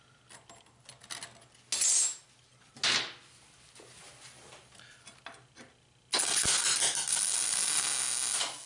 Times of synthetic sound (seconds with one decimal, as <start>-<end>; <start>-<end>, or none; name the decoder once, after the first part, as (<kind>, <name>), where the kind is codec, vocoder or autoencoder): none